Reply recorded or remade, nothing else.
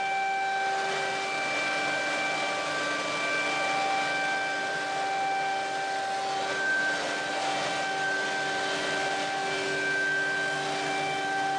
recorded